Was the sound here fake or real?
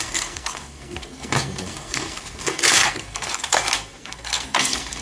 fake